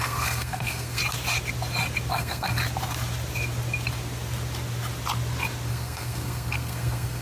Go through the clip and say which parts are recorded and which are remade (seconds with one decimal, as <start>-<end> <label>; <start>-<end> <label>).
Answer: 0.0-1.0 remade; 1.0-2.1 recorded; 2.1-2.6 remade; 2.6-5.7 recorded; 5.7-7.2 remade